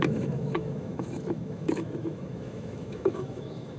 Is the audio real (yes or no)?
no